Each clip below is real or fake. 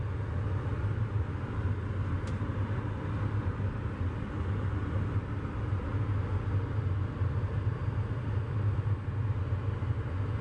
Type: real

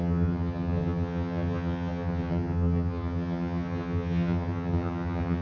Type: fake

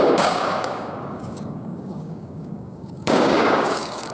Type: fake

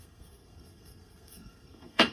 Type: fake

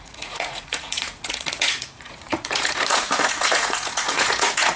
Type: fake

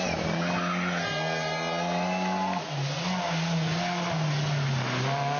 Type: real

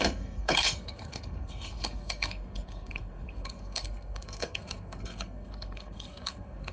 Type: fake